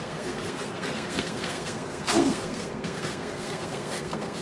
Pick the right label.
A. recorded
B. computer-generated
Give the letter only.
B